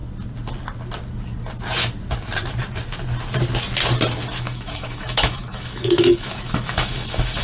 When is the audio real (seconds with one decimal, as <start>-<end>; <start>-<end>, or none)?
0.0-4.4